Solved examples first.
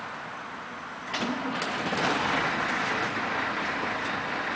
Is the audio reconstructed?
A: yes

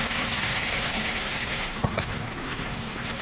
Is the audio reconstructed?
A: yes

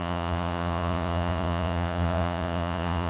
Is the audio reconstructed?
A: yes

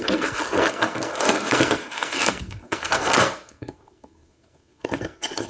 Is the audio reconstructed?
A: yes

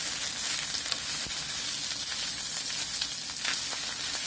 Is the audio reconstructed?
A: no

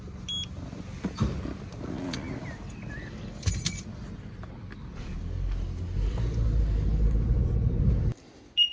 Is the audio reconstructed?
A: no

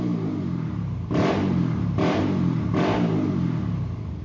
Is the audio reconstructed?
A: no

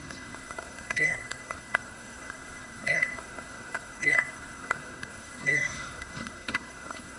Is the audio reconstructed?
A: yes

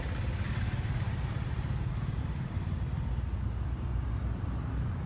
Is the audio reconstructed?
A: no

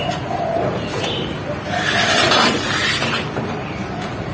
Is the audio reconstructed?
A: yes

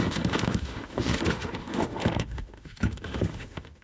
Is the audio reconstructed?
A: yes